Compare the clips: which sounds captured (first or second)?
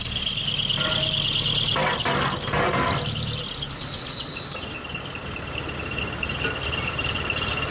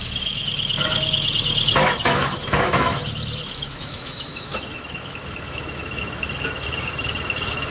first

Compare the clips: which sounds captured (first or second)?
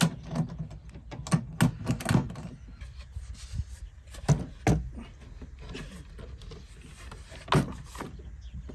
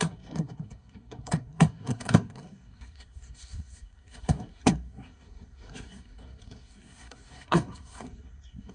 first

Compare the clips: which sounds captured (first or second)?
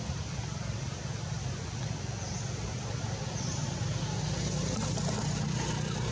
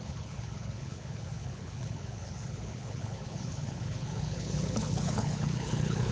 first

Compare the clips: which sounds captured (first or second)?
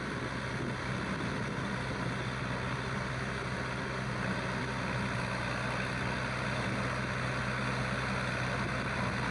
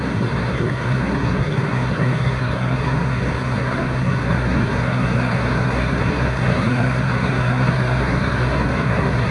first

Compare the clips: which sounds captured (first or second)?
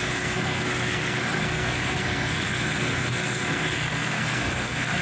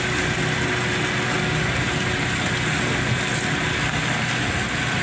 second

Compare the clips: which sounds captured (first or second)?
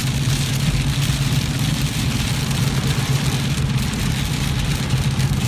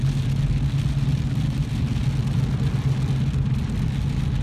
second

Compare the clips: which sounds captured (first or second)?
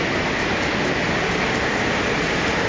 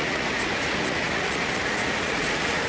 first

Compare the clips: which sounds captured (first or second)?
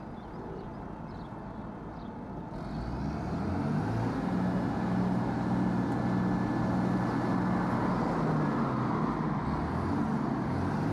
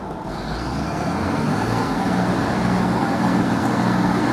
first